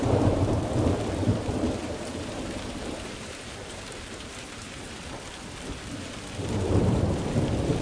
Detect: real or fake fake